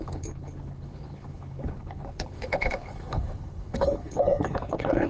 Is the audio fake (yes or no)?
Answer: yes